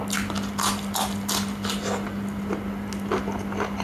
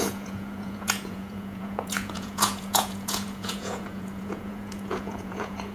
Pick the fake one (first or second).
second